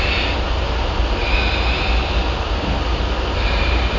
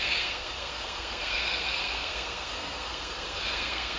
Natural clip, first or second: first